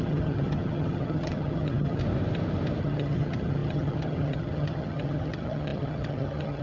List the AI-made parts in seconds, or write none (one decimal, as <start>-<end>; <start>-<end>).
0.0-2.0; 2.8-6.6